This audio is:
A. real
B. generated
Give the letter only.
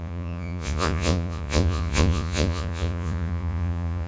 B